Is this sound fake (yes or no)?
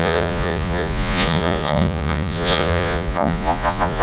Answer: yes